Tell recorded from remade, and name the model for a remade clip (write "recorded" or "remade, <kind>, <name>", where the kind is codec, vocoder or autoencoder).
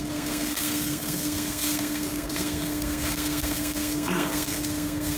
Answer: remade, codec, SNAC